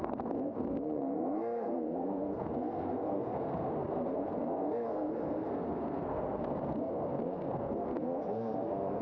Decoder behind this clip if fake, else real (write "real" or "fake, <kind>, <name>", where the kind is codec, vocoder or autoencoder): fake, codec, SNAC